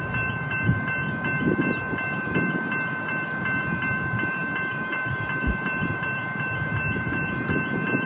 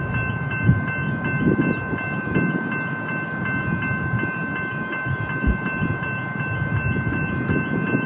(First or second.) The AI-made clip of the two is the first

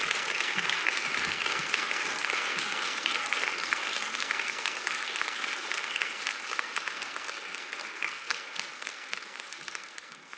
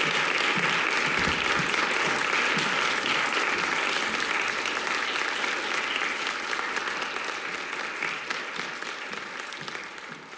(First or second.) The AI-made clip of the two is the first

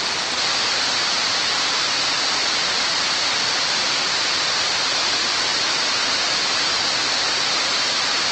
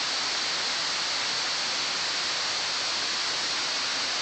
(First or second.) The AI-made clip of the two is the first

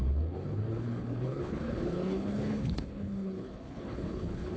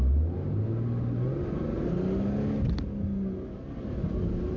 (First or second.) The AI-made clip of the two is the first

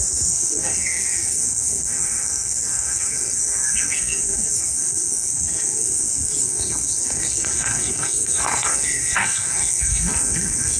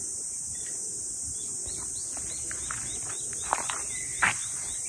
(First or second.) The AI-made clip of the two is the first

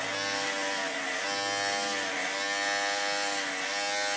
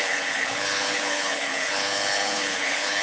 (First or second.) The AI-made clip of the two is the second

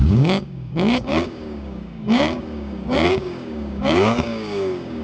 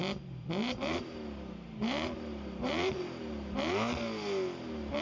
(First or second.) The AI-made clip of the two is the first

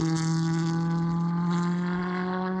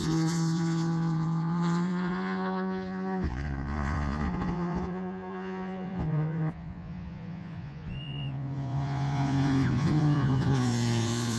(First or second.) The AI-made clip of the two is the second